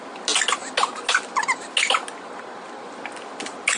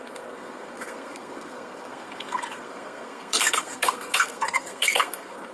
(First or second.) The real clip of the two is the first